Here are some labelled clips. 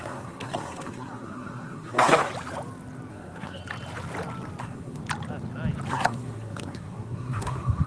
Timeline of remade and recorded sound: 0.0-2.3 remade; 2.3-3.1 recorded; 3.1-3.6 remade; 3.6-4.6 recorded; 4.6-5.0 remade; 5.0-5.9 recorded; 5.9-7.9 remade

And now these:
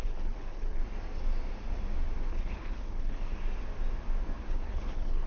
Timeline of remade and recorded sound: 0.0-0.8 remade; 0.8-2.3 recorded; 2.3-3.3 remade; 3.3-4.5 recorded; 4.5-5.3 remade

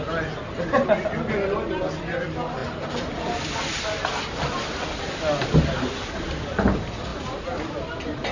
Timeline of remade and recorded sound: 0.0-8.3 recorded

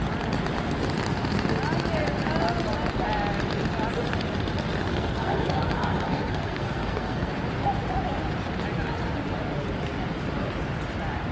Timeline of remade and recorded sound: 0.0-4.9 recorded; 4.9-7.3 remade; 7.3-11.3 recorded

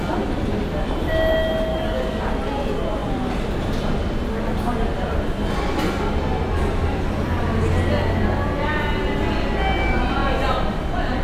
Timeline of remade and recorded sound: 0.0-1.7 recorded; 1.7-2.3 remade; 2.3-11.2 recorded